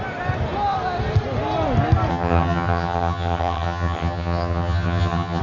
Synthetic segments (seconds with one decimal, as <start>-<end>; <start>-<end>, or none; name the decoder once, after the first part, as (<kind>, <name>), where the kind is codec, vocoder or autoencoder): 2.1-5.4 (vocoder, HiFi-GAN)